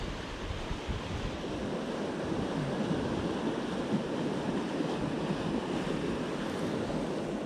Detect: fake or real real